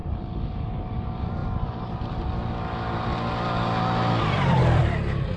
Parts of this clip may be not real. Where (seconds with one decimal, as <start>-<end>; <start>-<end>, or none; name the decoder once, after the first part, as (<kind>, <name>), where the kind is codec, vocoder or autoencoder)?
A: 0.0-0.7 (vocoder, BigVGAN v2)